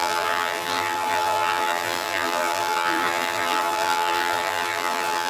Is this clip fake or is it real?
fake